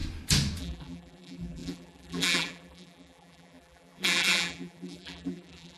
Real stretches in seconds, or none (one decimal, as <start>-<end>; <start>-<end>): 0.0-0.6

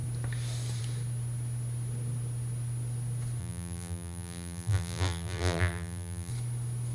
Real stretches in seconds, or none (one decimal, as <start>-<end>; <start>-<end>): 0.0-3.4; 6.3-6.9

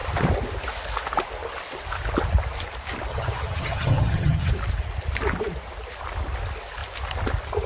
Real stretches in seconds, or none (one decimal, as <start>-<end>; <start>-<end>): 0.0-3.1; 4.5-7.7

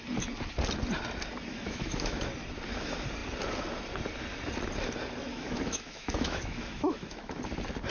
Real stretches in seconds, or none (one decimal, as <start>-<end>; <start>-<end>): 0.0-1.5; 2.2-5.3; 7.4-7.9

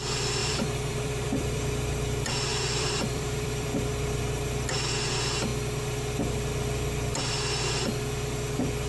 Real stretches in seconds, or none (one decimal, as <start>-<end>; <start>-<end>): 0.0-0.4; 1.9-2.5; 3.9-8.9

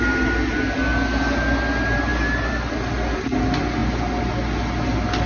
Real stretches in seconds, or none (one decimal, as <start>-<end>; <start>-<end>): 0.0-5.3